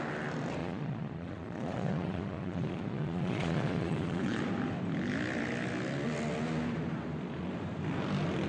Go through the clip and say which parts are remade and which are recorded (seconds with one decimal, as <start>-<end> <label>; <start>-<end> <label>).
0.0-0.6 recorded; 0.6-4.4 remade; 4.4-8.5 recorded